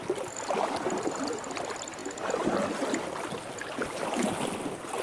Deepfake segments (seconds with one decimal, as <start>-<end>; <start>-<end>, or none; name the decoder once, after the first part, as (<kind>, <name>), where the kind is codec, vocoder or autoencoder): none